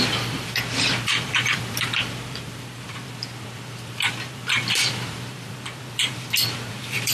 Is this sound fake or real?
fake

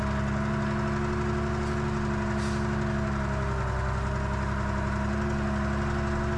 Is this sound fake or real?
real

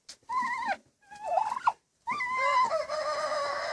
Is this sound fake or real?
real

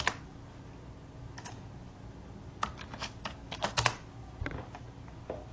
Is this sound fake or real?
real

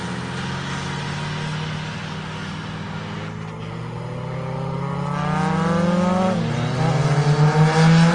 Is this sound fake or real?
real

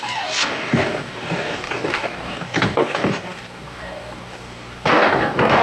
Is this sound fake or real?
fake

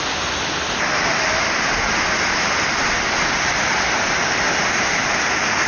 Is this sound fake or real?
real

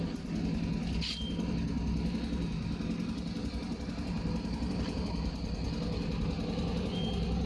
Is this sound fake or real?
real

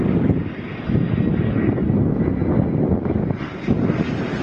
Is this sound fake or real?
real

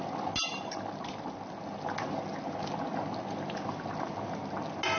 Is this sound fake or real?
real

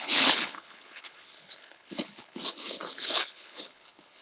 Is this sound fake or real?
fake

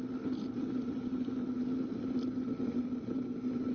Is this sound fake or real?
real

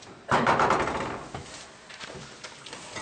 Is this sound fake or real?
real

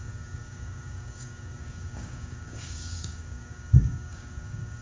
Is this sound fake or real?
fake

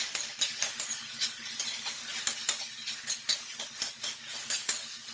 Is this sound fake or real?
real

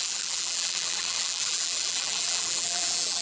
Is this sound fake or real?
fake